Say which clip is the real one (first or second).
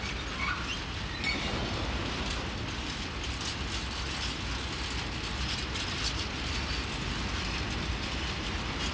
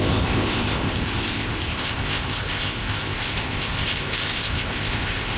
first